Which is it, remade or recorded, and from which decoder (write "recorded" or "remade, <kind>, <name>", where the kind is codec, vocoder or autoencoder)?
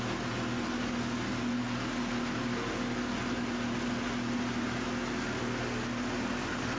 recorded